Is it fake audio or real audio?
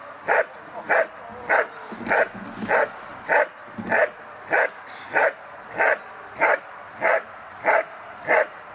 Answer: real